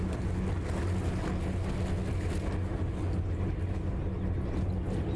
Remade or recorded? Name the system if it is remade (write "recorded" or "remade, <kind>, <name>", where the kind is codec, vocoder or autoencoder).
recorded